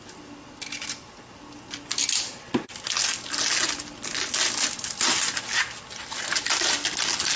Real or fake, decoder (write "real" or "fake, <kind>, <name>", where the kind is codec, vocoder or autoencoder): real